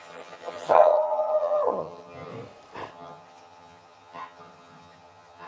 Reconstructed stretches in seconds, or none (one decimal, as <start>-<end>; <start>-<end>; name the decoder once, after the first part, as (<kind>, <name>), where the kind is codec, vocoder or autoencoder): 0.0-2.3 (vocoder, HiFi-GAN); 2.9-5.5